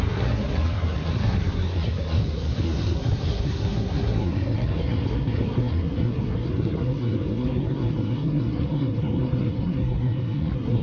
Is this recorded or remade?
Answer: remade